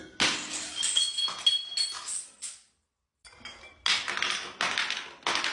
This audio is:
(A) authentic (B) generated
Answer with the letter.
A